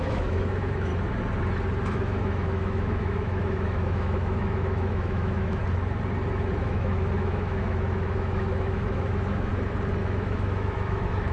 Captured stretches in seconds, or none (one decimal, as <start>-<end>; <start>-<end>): 0.9-1.8; 5.6-6.6; 9.5-10.0